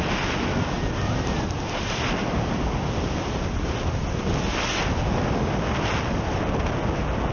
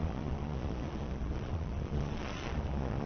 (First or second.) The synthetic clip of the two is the second